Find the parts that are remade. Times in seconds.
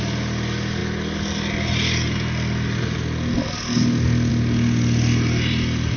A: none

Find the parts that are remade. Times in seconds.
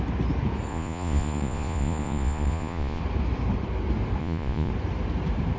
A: 0.7-3.0 (vocoder, Vocos); 4.2-4.7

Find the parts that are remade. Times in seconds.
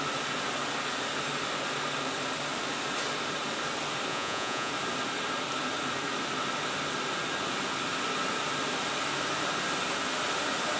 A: 4.1-4.7 (vocoder, Vocos)